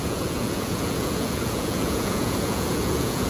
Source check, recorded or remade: remade